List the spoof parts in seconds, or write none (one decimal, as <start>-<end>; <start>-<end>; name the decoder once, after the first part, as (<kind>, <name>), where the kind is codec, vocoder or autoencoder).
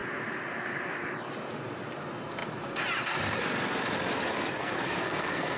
4.6-5.6 (codec, SNAC)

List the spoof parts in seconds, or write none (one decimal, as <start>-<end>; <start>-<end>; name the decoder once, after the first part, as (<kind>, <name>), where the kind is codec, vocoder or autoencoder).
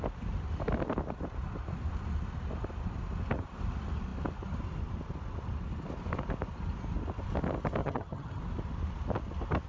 7.8-8.4 (vocoder, HiFi-GAN)